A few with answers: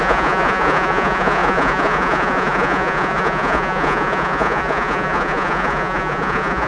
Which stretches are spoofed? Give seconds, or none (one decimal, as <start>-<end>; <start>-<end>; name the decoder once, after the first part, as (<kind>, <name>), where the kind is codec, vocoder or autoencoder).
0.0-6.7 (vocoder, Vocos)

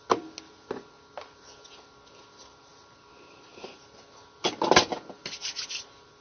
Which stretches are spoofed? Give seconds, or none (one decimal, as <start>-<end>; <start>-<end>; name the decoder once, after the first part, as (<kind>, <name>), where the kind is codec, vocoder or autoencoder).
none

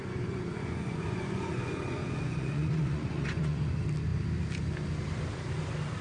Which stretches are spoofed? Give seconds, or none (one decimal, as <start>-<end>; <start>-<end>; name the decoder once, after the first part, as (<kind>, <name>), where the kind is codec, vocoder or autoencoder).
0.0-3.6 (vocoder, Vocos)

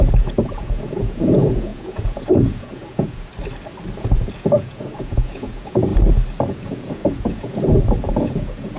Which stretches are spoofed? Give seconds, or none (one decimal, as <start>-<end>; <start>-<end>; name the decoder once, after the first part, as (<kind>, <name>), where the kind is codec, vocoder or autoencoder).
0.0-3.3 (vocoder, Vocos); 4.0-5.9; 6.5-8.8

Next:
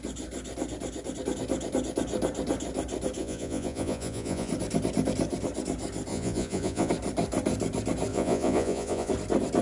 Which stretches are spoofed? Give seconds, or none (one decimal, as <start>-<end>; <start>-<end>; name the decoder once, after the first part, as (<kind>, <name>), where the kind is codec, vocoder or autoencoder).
3.2-4.5 (vocoder, Vocos); 6.1-6.9; 8.1-9.1

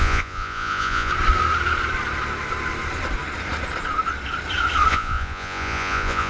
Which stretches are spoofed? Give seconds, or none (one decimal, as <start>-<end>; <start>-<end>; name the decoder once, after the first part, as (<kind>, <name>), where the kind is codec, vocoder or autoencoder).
0.0-1.1 (vocoder, Vocos); 4.9-6.3